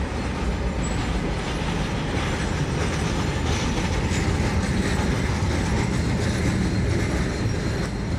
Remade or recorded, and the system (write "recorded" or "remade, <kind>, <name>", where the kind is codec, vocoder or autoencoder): recorded